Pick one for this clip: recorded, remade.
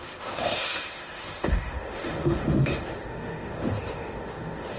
remade